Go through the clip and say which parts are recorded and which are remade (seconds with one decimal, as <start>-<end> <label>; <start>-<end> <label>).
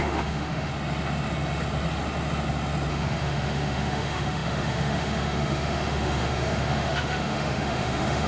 0.0-0.7 remade; 0.7-2.9 recorded; 2.9-8.3 remade